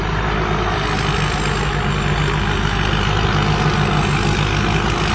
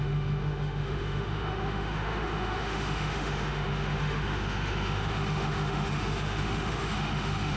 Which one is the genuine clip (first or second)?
first